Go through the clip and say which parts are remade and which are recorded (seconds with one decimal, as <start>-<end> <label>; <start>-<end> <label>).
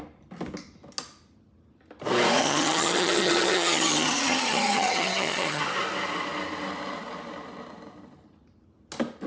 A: 0.0-2.4 recorded; 2.4-5.6 remade; 5.6-9.3 recorded